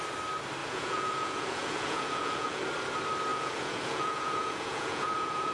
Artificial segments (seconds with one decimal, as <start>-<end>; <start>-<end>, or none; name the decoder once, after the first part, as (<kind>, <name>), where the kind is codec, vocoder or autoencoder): 0.6-2.6 (vocoder, Vocos); 3.3-5.5